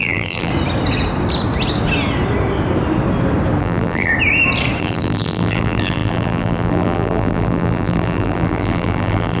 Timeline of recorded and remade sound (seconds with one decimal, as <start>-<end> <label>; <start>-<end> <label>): 0.0-0.5 remade; 0.5-3.6 recorded; 3.6-4.1 remade; 4.1-4.8 recorded; 4.8-9.4 remade